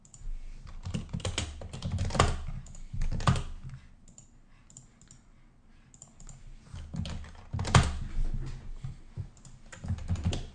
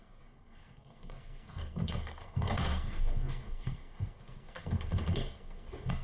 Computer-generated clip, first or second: second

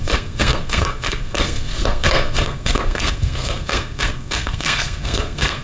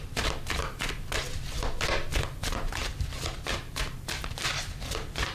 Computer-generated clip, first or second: first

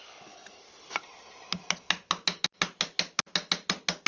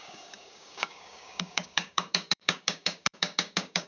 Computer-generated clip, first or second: second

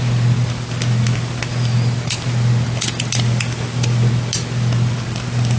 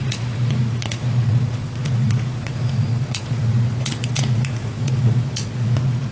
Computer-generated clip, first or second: second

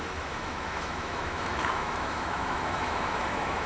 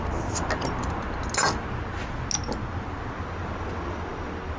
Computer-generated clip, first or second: first